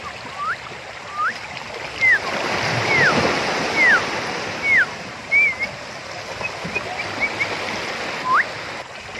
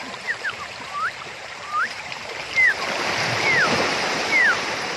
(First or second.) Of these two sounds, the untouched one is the first